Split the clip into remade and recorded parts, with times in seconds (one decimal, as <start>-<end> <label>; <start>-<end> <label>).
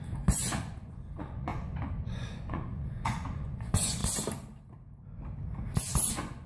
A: 0.0-4.0 remade; 4.0-6.1 recorded; 6.1-6.5 remade